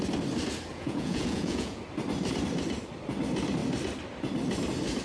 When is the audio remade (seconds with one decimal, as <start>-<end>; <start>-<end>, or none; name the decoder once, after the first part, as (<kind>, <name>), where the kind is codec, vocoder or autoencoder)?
0.7-1.8 (vocoder, Vocos)